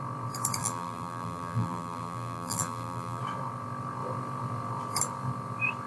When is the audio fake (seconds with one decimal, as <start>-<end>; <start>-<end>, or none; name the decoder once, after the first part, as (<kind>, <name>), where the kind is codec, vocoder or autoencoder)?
0.6-3.2 (vocoder, BigVGAN v2)